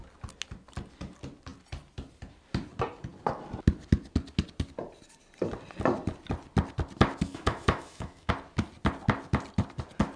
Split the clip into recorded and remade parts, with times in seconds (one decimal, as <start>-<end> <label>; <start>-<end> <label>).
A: 0.0-7.3 recorded; 7.3-8.3 remade; 8.3-10.2 recorded